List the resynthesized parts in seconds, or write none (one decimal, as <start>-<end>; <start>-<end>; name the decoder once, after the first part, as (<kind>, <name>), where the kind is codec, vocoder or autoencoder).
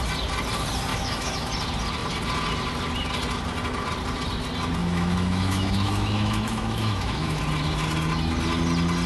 0.9-1.5 (autoencoder, DAC-VAE); 4.8-7.4